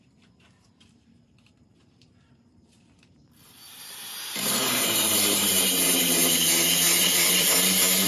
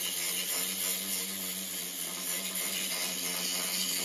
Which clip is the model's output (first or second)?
first